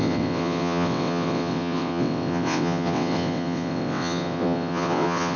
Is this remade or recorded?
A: remade